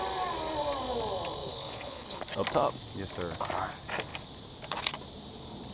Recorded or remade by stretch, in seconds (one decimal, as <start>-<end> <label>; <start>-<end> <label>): 0.0-1.4 recorded; 1.4-2.2 remade; 2.2-5.7 recorded